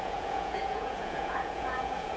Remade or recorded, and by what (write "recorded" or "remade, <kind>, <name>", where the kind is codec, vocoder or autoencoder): remade, vocoder, Vocos